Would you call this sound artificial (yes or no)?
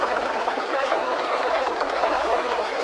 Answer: yes